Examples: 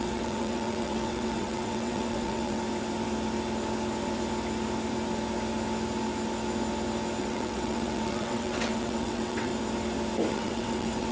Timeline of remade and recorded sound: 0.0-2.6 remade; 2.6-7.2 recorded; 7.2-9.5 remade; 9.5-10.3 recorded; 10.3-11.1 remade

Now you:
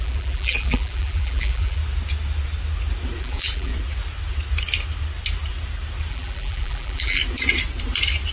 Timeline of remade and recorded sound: 0.0-1.8 remade; 1.8-3.2 recorded; 3.2-3.7 remade; 3.7-6.1 recorded; 6.1-7.2 remade; 7.2-8.3 recorded

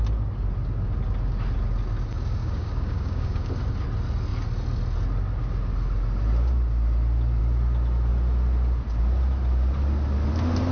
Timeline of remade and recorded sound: 0.0-2.4 recorded; 2.4-3.5 remade; 3.5-10.7 recorded

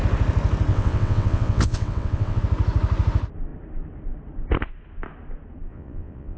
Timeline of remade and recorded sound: 0.0-0.7 recorded; 0.7-2.4 remade; 2.4-5.7 recorded; 5.7-6.4 remade

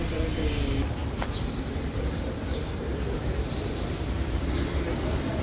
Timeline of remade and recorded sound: 0.0-5.4 recorded

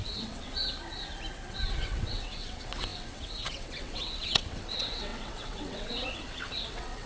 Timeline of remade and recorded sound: 0.0-0.6 remade; 0.6-1.5 recorded; 1.5-7.1 remade

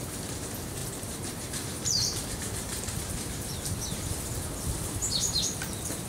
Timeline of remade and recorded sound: 0.0-6.1 remade